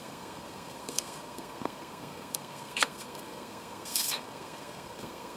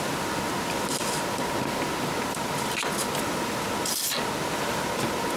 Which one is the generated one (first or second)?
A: first